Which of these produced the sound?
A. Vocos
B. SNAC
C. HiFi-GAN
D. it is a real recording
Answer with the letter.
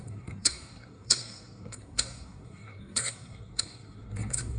B